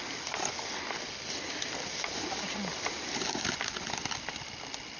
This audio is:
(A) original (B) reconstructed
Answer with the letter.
A